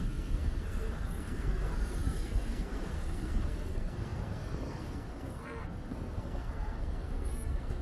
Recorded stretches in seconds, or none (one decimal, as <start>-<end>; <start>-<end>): none